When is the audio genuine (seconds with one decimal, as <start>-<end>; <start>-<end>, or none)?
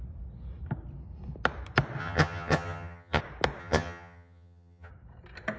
0.0-2.0; 3.2-3.6; 4.9-5.6